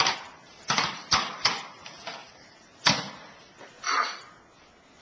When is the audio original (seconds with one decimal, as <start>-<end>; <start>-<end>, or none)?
0.0-5.0